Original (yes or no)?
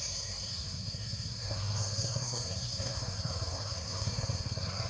no